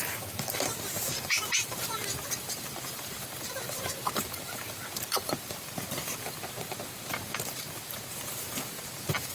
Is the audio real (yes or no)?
no